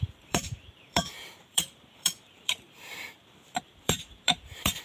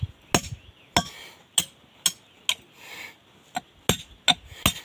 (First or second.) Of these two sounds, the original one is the second